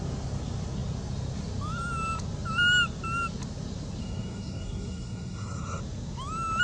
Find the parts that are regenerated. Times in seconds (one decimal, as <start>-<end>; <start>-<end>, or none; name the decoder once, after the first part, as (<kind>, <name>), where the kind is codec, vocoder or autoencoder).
4.0-5.8 (codec, SNAC)